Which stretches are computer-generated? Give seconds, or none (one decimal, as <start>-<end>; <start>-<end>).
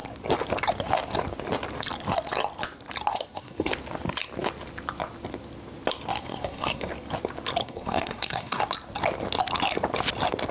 3.1-3.7; 6.2-6.9; 7.6-8.6